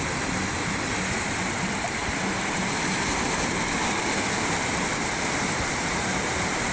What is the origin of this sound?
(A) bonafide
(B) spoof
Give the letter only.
B